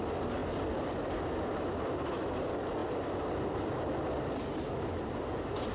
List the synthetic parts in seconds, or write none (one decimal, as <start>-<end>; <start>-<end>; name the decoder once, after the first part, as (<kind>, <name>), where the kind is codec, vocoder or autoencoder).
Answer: none